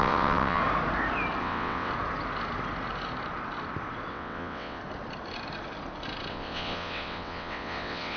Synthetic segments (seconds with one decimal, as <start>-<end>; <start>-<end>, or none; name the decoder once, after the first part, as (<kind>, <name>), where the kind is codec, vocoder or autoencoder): 0.0-0.6 (vocoder, WaveNeXt); 1.4-1.9; 4.1-4.8; 6.3-8.2